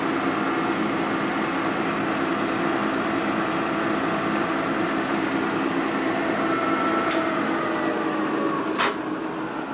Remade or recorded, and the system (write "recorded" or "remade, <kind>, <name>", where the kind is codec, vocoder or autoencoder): recorded